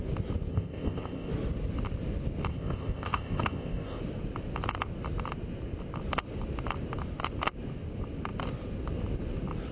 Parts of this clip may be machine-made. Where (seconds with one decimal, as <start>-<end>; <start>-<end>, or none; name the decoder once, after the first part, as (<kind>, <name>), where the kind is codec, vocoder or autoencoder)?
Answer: 0.5-1.3 (codec, ZipCodec); 2.5-4.0